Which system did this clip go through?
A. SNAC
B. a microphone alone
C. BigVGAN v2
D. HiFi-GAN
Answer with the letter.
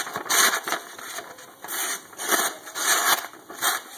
B